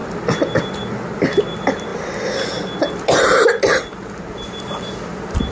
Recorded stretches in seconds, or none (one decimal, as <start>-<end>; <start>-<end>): 0.0-5.5